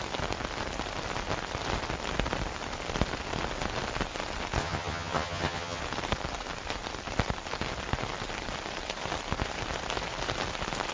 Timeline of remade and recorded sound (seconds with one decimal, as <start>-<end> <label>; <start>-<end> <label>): 0.0-4.6 recorded; 4.6-5.8 remade; 5.8-10.9 recorded